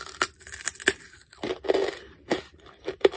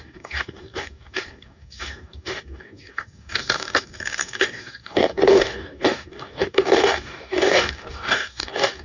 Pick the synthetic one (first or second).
second